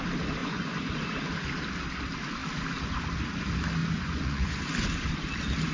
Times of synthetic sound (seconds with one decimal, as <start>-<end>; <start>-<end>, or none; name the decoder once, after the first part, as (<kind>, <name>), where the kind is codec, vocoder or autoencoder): 0.4-1.0 (vocoder, Vocos); 3.8-4.6